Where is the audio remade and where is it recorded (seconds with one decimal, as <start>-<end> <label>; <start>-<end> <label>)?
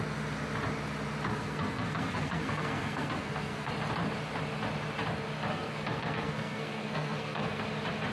0.0-1.3 recorded; 1.3-3.7 remade; 3.7-5.5 recorded; 5.5-7.6 remade; 7.6-8.1 recorded